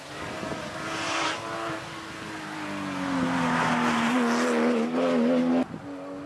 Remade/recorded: recorded